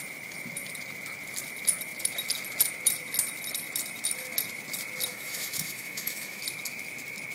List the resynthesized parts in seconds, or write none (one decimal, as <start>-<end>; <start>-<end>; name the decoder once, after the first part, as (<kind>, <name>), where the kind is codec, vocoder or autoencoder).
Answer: 5.1-6.4 (autoencoder, DAC-VAE)